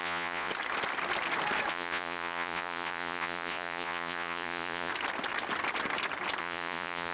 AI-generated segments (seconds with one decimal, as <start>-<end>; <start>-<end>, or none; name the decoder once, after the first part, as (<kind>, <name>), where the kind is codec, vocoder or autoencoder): 0.0-0.5 (vocoder, Vocos); 1.7-4.9; 6.4-7.1